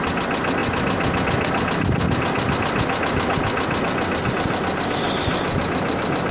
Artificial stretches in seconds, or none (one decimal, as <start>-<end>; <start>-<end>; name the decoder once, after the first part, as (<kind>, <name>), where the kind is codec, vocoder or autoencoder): none